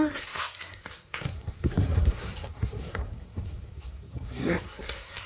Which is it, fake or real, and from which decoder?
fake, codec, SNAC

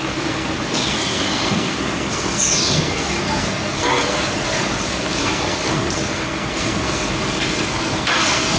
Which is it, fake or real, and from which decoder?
fake, codec, SNAC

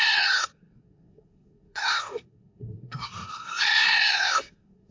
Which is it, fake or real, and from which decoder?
fake, codec, SNAC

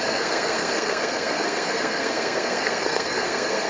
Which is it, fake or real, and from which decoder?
fake, codec, SNAC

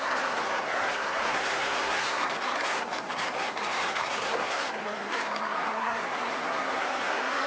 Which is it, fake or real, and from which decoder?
fake, codec, SNAC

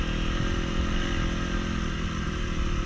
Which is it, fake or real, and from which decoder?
real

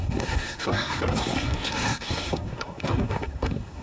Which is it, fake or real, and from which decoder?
fake, codec, SNAC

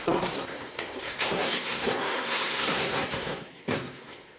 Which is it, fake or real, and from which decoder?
fake, codec, SNAC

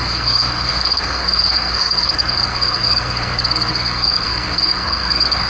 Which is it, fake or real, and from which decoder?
fake, codec, SNAC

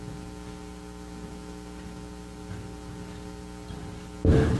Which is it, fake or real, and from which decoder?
real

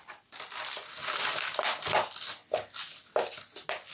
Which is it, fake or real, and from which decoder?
real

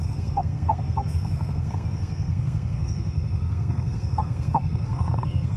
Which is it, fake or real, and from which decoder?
fake, codec, SNAC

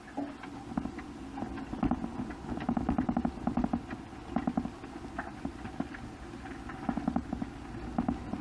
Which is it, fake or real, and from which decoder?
real